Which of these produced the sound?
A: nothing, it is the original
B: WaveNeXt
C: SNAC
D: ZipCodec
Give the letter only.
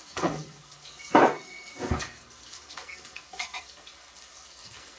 C